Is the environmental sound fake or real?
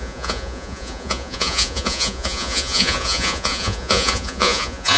fake